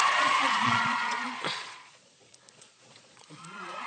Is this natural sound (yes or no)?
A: no